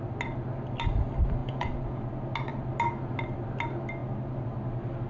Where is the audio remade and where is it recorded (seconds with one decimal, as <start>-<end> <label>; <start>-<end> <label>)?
0.0-1.4 recorded; 1.4-2.0 remade; 2.0-5.1 recorded

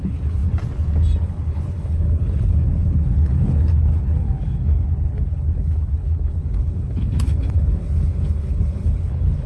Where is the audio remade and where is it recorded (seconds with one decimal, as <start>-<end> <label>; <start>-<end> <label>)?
0.0-0.4 remade; 0.4-1.2 recorded; 1.2-9.5 remade

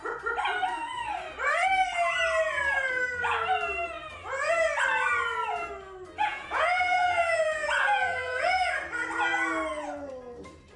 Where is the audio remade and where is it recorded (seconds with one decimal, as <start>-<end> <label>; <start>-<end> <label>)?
0.0-6.2 recorded; 6.2-8.7 remade; 8.7-10.8 recorded

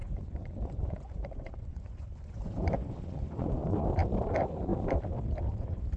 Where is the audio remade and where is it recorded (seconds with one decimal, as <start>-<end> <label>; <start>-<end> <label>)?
0.0-3.6 remade; 3.6-6.0 recorded

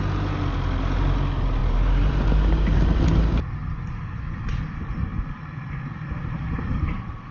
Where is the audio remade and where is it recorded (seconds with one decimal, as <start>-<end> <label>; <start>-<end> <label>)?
0.0-1.6 recorded; 1.6-2.9 remade; 2.9-3.6 recorded; 3.6-4.6 remade; 4.6-5.1 recorded; 5.1-7.3 remade

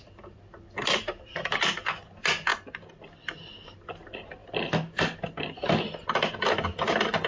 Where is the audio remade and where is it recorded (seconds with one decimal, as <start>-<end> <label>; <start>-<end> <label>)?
0.0-4.4 recorded; 4.4-6.0 remade; 6.0-7.3 recorded

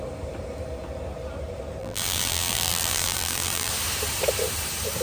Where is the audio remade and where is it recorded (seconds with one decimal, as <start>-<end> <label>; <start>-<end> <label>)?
0.0-1.8 recorded; 1.8-3.7 remade; 3.7-5.0 recorded